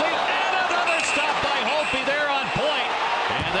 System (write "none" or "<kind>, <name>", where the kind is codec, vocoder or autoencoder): none